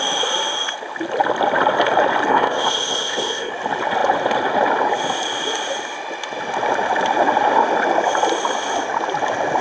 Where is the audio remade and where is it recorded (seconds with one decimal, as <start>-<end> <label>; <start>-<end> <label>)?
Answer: 0.0-2.3 recorded; 2.3-3.5 remade; 3.5-9.6 recorded